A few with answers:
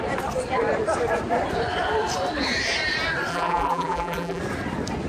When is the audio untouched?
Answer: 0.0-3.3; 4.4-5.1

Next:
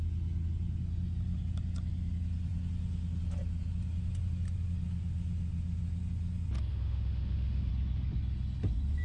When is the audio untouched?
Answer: 0.0-6.7; 7.7-9.0

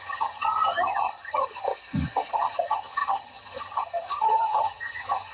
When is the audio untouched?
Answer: 1.7-2.3

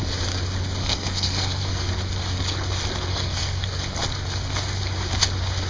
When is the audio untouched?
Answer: 0.0-0.8; 1.9-3.1; 3.8-5.7

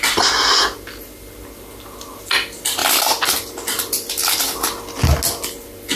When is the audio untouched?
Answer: 0.0-6.0

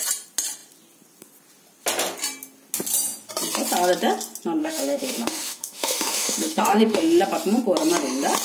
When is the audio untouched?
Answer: 0.0-4.6; 7.2-8.4

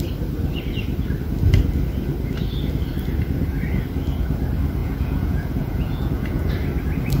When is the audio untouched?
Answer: 0.0-4.8; 6.5-7.2

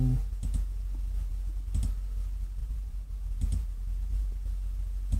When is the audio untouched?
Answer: 0.0-2.6; 4.3-5.2